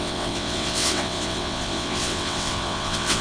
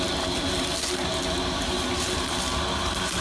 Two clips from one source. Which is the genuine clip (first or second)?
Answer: second